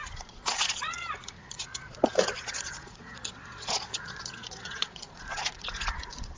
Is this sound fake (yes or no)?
yes